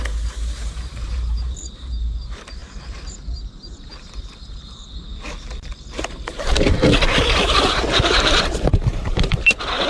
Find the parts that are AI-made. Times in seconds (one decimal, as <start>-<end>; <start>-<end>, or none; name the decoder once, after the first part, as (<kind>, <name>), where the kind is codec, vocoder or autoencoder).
0.0-4.8 (vocoder, BigVGAN v2); 6.0-9.9